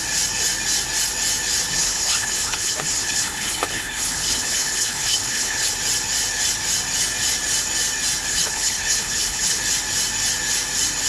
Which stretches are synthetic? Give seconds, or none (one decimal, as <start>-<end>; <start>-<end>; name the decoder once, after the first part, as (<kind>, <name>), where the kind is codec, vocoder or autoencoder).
1.7-5.7 (codec, HILCodec); 8.3-9.6